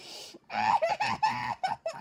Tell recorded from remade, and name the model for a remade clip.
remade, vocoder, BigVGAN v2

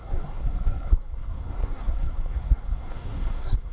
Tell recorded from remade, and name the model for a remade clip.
remade, codec, SNAC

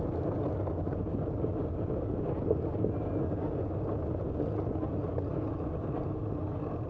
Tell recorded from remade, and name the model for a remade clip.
recorded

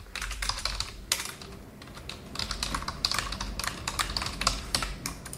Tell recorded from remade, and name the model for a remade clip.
recorded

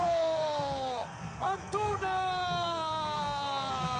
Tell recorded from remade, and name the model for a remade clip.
remade, codec, SNAC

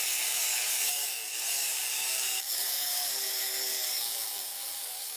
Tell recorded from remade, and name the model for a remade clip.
remade, codec, DAC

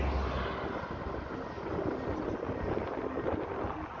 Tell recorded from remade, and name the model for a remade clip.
recorded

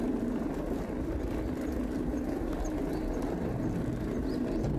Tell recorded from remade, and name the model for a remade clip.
recorded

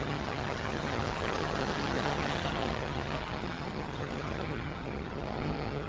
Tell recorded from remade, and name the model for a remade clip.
remade, vocoder, HiFi-GAN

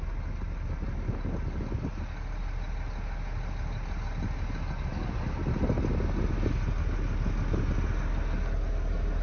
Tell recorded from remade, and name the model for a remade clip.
recorded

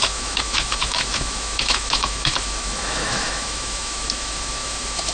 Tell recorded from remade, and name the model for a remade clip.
remade, autoencoder, DAC-VAE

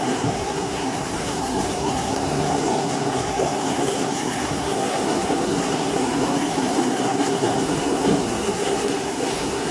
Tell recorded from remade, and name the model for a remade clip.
remade, codec, SNAC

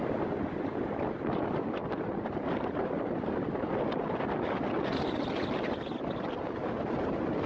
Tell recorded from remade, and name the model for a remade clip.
recorded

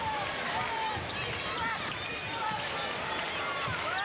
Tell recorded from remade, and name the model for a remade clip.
recorded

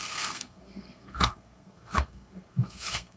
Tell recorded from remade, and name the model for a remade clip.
remade, codec, SNAC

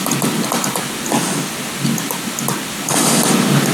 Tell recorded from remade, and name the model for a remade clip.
recorded